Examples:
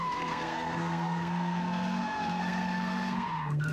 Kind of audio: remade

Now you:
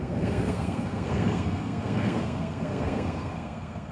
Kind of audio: remade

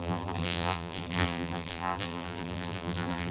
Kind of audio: remade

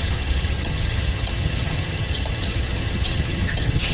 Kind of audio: remade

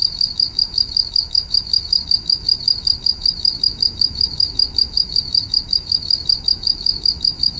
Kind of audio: remade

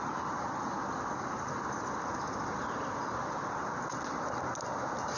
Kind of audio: recorded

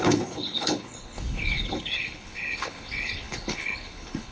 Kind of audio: remade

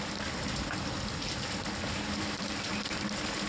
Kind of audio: recorded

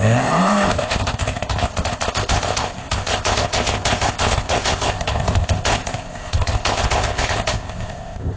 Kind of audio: remade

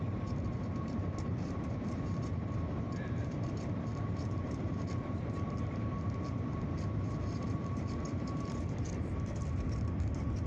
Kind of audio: remade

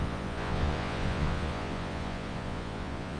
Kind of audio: remade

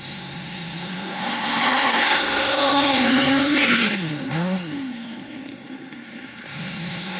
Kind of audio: remade